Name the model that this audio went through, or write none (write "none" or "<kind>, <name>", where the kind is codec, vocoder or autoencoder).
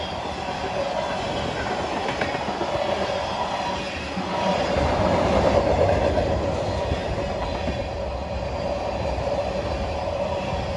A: none